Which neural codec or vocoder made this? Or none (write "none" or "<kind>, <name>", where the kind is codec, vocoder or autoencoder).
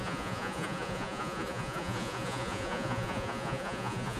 vocoder, Vocos